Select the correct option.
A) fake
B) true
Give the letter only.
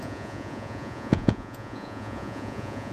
A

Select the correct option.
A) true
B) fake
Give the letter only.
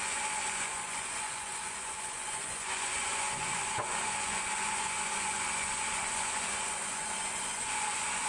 B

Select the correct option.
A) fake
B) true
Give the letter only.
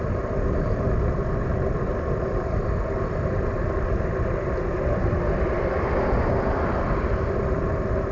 B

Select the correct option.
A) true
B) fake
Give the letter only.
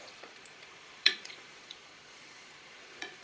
B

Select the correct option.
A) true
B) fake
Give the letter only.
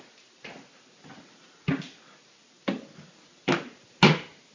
A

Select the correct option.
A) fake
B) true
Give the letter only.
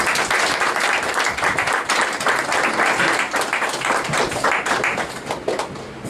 B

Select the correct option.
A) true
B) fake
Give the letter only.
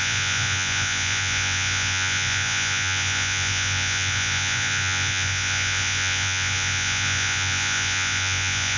B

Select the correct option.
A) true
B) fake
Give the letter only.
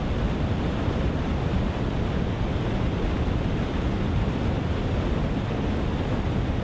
A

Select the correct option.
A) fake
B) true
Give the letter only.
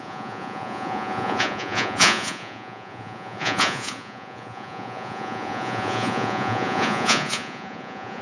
A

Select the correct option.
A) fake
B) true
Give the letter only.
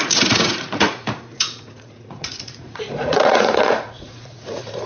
A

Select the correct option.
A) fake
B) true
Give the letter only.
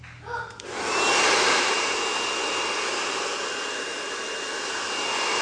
B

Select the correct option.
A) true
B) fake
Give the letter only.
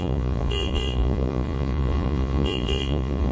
B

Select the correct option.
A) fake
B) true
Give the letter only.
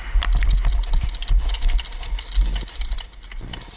B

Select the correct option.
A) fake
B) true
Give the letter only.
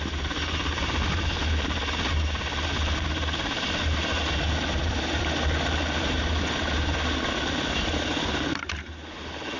B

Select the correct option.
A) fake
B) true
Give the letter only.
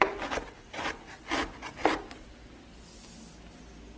B